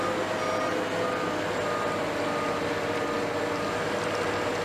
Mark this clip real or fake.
real